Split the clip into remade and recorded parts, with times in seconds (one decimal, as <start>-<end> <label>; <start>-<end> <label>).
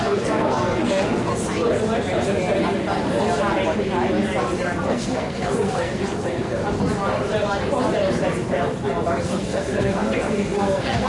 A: 0.0-1.3 remade; 1.3-4.9 recorded; 4.9-6.6 remade; 6.6-9.2 recorded; 9.2-11.1 remade